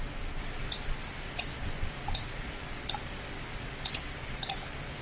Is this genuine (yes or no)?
yes